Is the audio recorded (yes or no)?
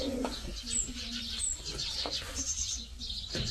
no